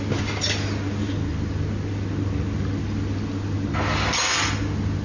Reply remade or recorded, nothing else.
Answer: recorded